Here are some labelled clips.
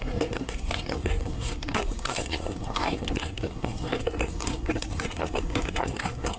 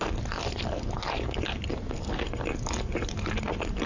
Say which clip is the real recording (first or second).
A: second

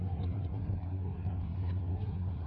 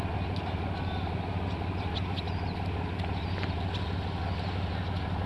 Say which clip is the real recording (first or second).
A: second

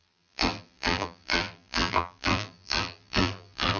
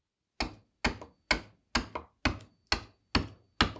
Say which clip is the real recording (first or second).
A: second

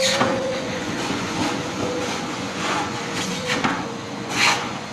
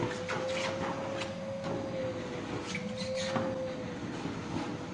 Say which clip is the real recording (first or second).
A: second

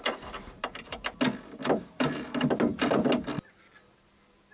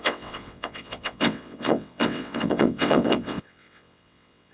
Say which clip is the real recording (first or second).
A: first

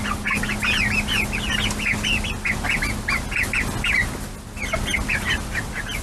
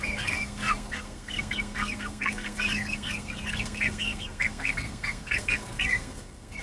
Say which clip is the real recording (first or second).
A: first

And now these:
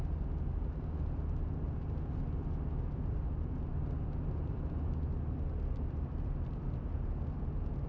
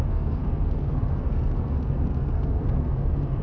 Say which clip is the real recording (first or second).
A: first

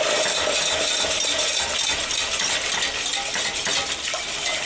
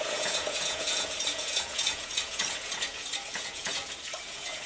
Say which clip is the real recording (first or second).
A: first